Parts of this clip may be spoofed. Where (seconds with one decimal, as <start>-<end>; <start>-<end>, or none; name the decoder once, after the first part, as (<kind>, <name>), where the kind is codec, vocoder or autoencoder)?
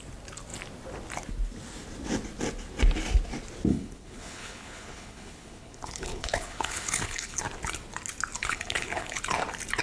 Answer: 3.7-7.4 (codec, HILCodec); 8.4-9.2